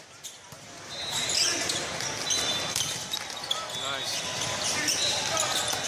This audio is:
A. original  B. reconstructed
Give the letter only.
A